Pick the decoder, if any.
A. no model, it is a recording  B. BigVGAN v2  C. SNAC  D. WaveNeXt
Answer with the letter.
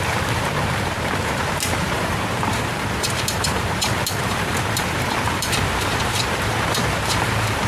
B